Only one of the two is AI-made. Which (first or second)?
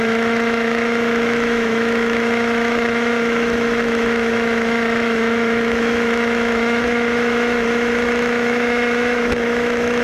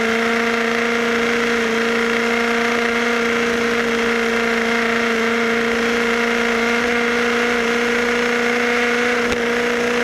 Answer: first